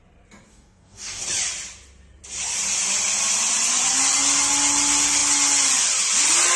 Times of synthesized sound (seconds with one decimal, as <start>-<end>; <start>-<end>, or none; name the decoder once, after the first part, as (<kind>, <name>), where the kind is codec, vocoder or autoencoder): 0.5-1.2 (codec, DAC)